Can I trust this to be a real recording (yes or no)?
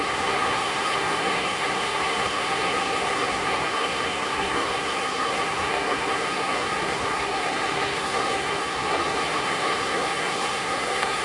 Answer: no